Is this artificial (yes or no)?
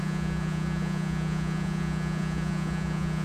yes